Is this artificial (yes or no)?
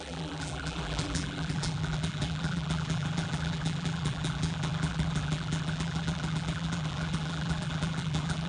yes